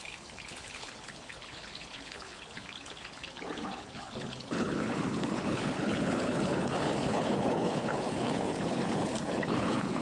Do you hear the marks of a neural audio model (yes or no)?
yes